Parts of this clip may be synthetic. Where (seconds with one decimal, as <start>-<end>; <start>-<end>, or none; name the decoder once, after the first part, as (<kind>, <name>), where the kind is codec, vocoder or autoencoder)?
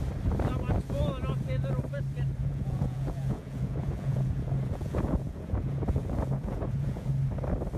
2.4-7.1 (vocoder, Vocos)